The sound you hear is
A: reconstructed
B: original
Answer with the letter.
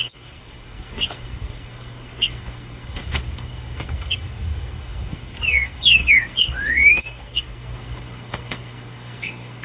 A